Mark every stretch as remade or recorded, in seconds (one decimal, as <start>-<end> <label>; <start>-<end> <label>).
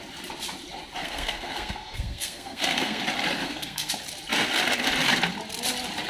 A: 0.0-1.0 recorded; 1.0-3.0 remade; 3.0-3.4 recorded; 3.4-3.9 remade; 3.9-6.1 recorded